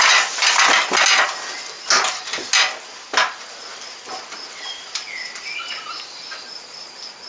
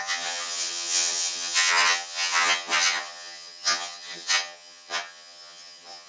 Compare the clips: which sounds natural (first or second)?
first